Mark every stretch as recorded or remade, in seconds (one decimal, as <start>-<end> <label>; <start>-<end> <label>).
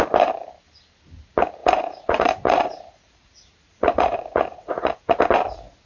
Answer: 0.0-1.6 recorded; 1.6-5.1 remade; 5.1-5.9 recorded